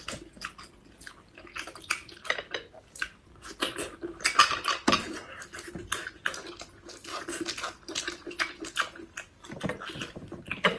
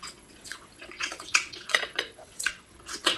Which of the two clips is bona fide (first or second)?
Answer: first